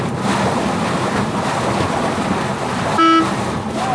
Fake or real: real